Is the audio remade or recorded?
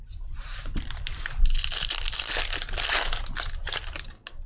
recorded